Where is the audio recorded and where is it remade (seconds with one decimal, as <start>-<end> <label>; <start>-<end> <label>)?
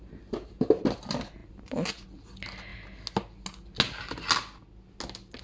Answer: 0.0-5.4 recorded